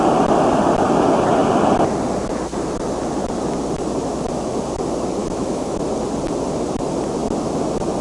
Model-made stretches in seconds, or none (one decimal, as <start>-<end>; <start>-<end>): 5.2-5.8